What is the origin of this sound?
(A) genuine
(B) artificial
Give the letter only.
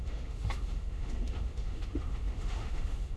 B